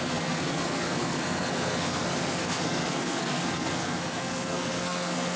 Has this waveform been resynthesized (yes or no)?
yes